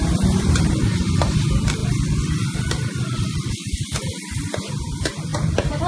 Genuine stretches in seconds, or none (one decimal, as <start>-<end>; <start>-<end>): 1.8-2.7